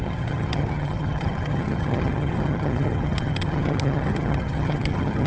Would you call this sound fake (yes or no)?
yes